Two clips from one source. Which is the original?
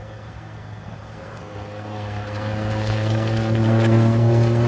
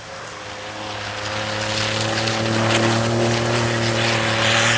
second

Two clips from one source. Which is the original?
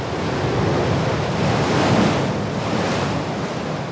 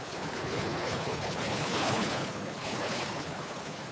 first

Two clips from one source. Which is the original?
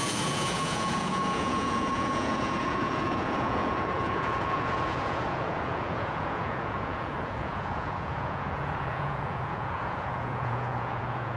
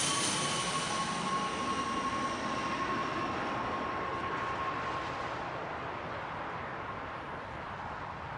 second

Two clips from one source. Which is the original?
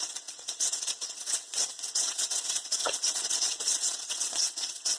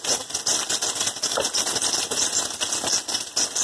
second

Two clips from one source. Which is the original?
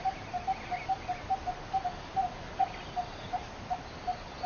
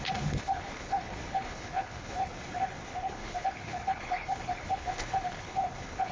first